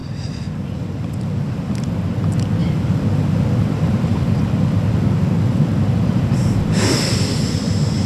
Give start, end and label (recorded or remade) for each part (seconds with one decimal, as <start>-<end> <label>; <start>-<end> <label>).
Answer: 0.0-1.9 remade; 1.9-2.6 recorded; 2.6-4.3 remade; 4.3-8.1 recorded